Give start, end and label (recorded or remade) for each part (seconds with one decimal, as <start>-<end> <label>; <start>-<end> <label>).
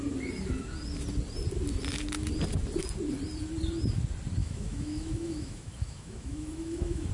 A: 0.0-4.4 recorded; 4.4-7.1 remade